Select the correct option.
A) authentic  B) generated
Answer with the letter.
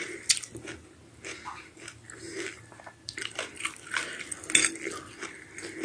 A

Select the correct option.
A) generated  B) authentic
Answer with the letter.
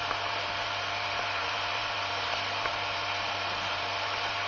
A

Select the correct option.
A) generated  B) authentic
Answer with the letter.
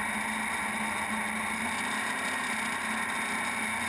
B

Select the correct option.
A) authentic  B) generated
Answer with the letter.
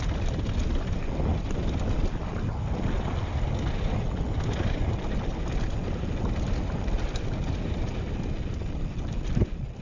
A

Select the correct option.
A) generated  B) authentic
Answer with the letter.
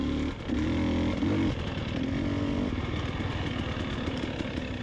B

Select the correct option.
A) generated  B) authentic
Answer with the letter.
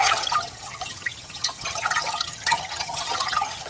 A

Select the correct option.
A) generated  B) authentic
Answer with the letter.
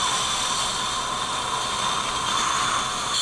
B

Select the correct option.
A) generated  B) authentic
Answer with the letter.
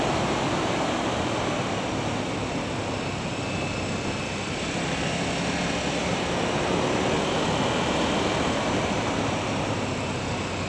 B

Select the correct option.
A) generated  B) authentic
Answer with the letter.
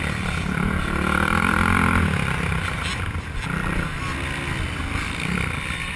B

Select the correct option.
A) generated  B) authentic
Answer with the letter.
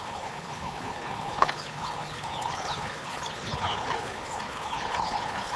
A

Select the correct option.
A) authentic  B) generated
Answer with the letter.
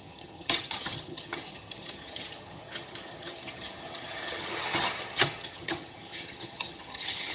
B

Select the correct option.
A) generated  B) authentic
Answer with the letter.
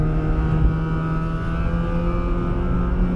B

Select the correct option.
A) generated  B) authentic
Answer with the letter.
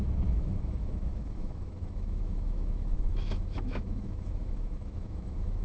A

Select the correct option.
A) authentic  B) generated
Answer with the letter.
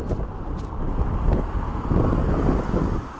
A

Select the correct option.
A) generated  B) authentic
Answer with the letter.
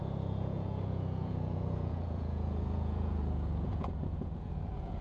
A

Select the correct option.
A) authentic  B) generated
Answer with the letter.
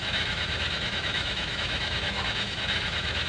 B